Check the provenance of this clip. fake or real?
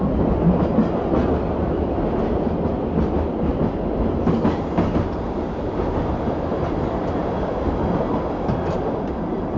real